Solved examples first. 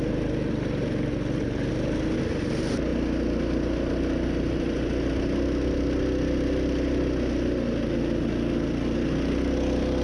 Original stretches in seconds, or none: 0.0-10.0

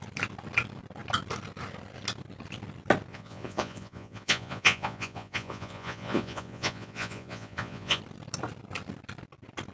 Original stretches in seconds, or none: 0.0-3.1; 8.0-9.7

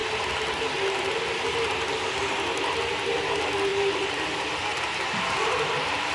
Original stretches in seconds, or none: 0.0-1.5; 2.2-3.7; 4.2-4.7

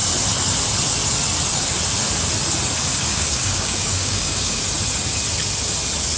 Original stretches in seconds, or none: 0.0-2.9; 4.6-6.2

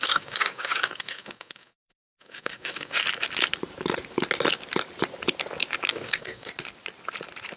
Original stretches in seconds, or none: 3.0-5.9; 6.5-7.6